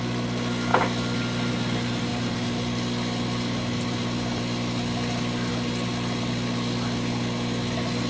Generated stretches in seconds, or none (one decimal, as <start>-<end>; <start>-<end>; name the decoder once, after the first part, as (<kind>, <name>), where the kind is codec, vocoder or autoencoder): none